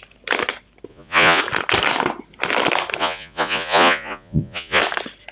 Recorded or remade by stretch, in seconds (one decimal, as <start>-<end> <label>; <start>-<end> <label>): 0.0-0.9 recorded; 0.9-1.4 remade; 1.4-3.0 recorded; 3.0-4.8 remade; 4.8-5.3 recorded